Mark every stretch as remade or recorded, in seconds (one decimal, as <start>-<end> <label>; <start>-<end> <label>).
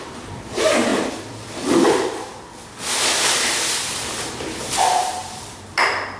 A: 0.0-6.2 remade